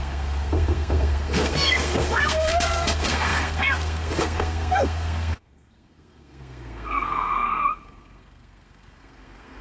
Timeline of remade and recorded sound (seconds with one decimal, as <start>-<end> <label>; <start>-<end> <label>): 0.0-9.6 remade